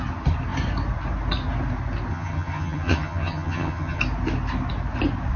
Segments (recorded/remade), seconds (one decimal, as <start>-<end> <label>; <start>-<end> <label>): 0.0-2.1 recorded; 2.1-4.0 remade; 4.0-5.4 recorded